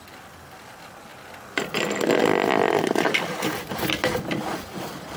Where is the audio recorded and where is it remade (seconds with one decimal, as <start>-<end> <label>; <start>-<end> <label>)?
0.0-5.2 recorded